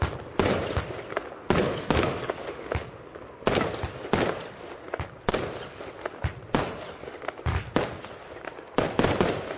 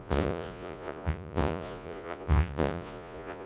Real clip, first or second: first